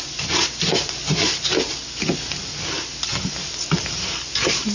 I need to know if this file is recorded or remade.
recorded